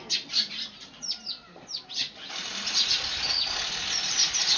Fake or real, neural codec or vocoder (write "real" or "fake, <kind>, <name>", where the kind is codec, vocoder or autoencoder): real